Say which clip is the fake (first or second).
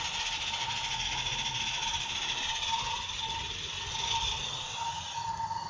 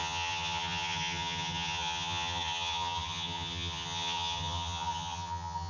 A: second